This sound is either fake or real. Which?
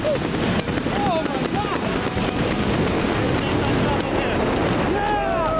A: real